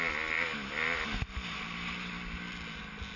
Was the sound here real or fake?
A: real